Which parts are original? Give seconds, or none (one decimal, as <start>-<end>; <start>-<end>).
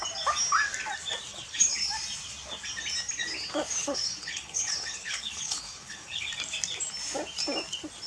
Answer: 0.0-1.3; 1.9-3.8; 6.3-8.1